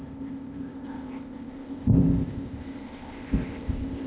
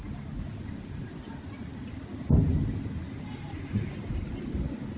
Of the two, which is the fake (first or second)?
first